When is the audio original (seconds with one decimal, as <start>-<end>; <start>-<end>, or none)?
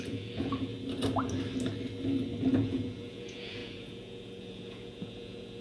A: 0.7-2.4